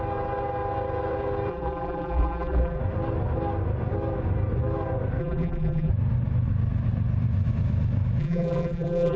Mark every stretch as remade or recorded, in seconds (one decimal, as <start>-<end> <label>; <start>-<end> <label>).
0.0-1.5 recorded; 1.5-2.8 remade; 2.8-5.2 recorded; 5.2-5.9 remade; 5.9-8.2 recorded; 8.2-9.2 remade